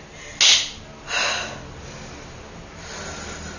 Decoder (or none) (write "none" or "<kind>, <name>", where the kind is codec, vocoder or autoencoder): none